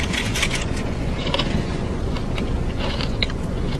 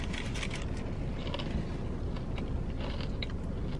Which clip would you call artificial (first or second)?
first